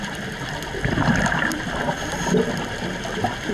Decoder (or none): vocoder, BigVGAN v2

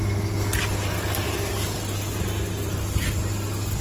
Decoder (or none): none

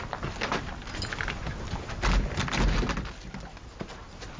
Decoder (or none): none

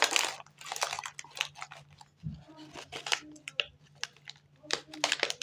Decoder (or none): none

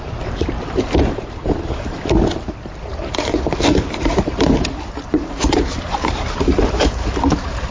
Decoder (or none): vocoder, BigVGAN v2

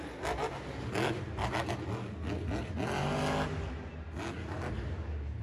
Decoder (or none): none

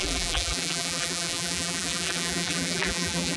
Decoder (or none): vocoder, BigVGAN v2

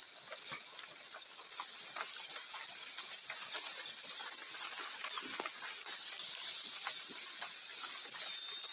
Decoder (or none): none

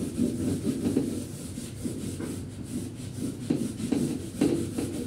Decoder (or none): none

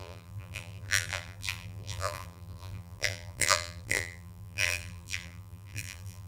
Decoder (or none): vocoder, BigVGAN v2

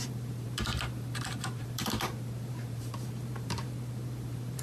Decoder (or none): vocoder, BigVGAN v2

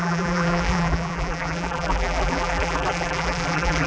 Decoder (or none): vocoder, BigVGAN v2